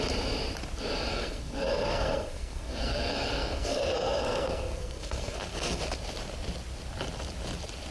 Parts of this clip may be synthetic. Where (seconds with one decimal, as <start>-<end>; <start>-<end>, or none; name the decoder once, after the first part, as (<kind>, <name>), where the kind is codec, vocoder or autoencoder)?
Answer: 1.1-5.8 (codec, SNAC)